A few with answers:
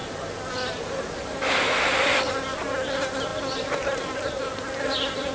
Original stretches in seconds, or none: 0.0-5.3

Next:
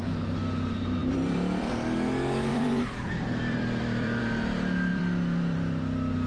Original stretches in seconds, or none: 0.0-1.0; 1.7-2.5; 4.2-4.9; 5.8-6.3